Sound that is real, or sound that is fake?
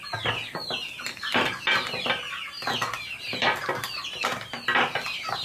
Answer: real